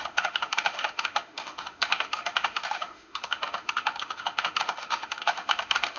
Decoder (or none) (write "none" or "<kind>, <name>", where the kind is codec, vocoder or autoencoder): autoencoder, DAC-VAE